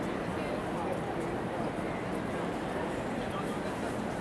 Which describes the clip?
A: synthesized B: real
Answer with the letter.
B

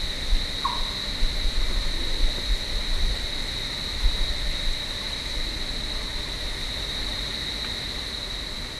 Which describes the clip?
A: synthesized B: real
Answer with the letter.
B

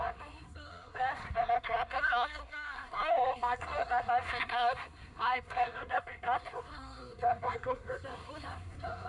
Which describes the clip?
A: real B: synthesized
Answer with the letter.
B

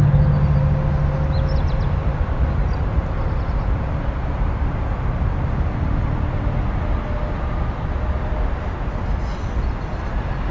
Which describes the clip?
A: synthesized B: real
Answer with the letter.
B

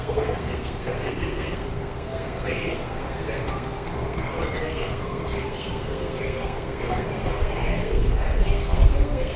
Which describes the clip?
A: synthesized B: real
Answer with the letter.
A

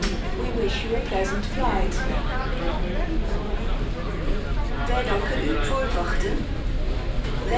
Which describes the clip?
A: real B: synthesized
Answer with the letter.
A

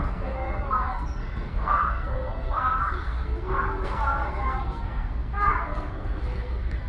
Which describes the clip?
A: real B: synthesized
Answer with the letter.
B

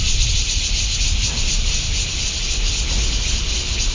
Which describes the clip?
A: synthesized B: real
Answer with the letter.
B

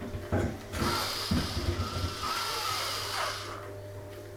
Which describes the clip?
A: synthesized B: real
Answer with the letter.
B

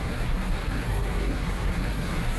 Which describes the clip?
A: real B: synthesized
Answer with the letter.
B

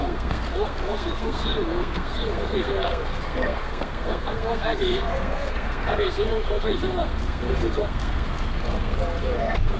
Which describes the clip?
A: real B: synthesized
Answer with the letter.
B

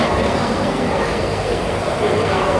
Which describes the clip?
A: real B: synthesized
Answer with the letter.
B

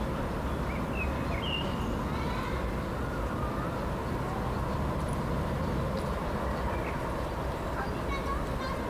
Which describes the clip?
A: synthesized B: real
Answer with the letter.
B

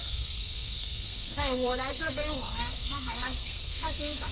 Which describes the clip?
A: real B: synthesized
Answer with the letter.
B